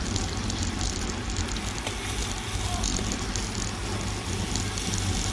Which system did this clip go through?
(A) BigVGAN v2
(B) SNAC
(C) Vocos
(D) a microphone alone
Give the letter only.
D